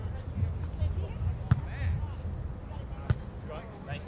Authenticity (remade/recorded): recorded